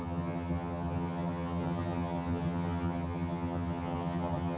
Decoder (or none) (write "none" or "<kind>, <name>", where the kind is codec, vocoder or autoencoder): vocoder, HiFi-GAN